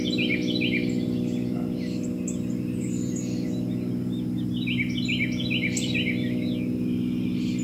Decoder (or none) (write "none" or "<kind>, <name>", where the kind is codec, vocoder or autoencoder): none